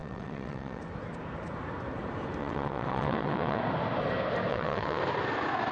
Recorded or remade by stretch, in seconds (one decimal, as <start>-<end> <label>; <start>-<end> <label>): 0.0-0.8 remade; 0.8-2.4 recorded; 2.4-3.6 remade; 3.6-4.5 recorded; 4.5-5.0 remade; 5.0-5.7 recorded